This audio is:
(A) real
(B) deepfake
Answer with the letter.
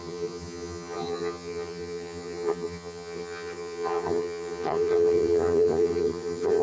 B